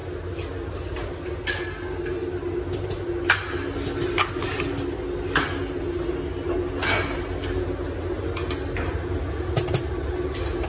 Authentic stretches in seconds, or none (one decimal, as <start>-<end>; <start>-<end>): 0.0-10.7

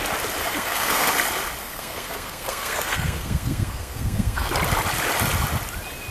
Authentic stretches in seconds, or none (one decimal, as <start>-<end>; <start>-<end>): 0.0-0.4; 1.1-1.6; 4.5-6.1

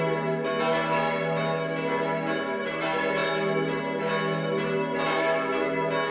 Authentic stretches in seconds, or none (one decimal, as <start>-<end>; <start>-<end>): 0.0-6.1

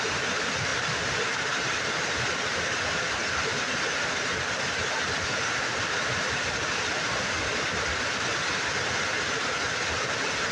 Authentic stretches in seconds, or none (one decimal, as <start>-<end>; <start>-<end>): 0.0-10.5

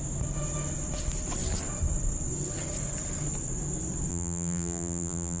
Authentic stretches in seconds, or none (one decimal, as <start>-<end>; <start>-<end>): 0.0-4.1

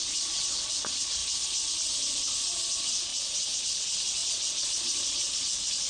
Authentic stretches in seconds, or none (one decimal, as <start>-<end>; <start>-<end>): 1.2-2.1; 3.1-3.6